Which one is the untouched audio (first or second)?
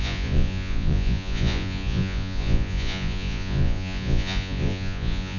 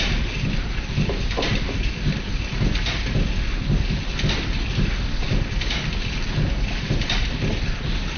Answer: second